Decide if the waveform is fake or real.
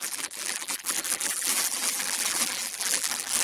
fake